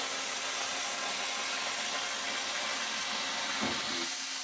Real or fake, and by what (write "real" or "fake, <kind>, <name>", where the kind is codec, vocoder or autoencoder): real